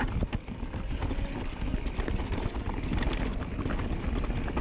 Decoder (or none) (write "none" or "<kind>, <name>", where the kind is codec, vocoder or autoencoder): none